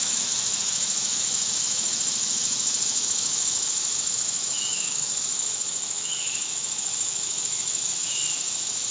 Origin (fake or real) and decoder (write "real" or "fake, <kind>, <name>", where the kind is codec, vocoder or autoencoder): fake, autoencoder, DAC-VAE